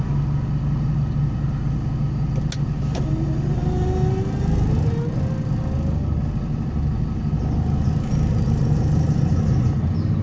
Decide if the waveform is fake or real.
real